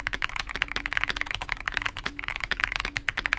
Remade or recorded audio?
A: remade